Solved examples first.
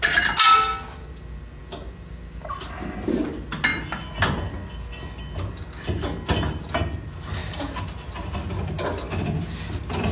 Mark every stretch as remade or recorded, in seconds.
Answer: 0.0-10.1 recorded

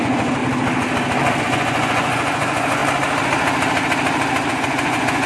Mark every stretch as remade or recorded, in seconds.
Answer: 0.0-0.4 remade; 0.4-1.4 recorded; 1.4-2.8 remade; 2.8-4.5 recorded; 4.5-5.3 remade

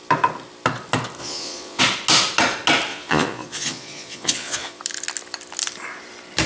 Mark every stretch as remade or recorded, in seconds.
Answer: 0.0-1.2 recorded; 1.2-1.8 remade; 1.8-2.9 recorded; 2.9-4.8 remade; 4.8-6.5 recorded

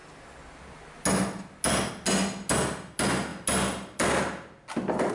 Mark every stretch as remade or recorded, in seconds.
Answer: 0.0-5.1 recorded

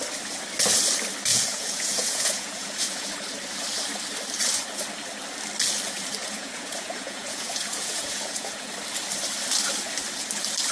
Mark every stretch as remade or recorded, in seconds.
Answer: 0.0-1.3 recorded; 1.3-3.1 remade; 3.1-6.2 recorded; 6.2-8.7 remade; 8.7-10.7 recorded

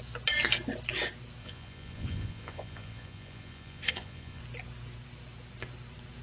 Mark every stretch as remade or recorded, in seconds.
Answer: 0.0-1.4 recorded; 1.4-4.4 remade; 4.4-6.2 recorded

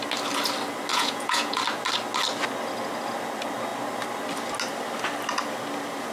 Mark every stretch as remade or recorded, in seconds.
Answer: 0.0-0.9 recorded; 0.9-1.6 remade; 1.6-6.1 recorded